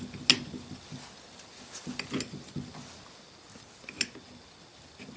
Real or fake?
real